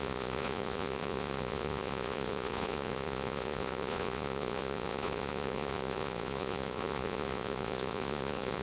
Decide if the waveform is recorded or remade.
remade